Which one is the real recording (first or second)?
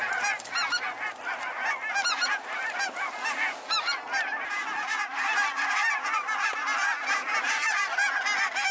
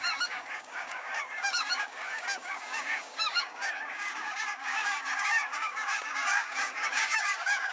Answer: first